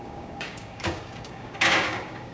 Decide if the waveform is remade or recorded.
remade